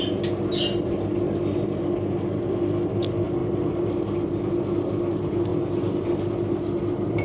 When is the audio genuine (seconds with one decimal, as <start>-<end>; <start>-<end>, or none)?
0.0-7.2